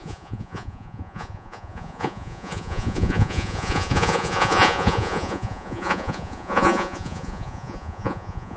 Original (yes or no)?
no